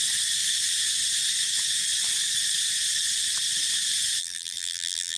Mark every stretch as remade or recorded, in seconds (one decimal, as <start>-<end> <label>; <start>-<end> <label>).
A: 0.0-4.2 recorded; 4.2-5.2 remade